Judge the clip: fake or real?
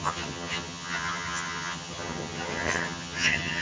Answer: fake